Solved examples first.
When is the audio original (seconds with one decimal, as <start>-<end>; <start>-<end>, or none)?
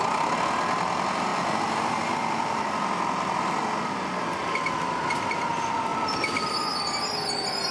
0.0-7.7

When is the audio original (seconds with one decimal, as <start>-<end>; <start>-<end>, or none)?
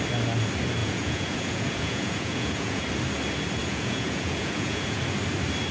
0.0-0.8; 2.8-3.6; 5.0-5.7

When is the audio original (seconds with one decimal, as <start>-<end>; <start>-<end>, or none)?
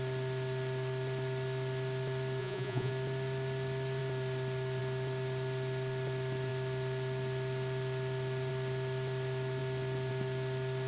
0.0-2.4; 2.9-10.9